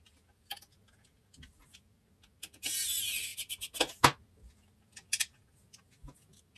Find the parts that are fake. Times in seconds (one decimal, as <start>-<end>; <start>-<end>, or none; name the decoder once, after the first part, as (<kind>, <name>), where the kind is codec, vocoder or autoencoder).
none